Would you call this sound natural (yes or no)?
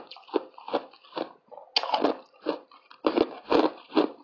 yes